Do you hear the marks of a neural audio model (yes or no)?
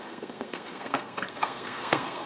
yes